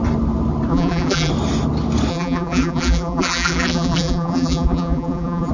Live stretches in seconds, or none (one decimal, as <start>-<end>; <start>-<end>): 0.0-0.7; 1.3-2.1